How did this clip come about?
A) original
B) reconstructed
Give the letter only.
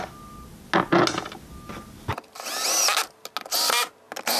A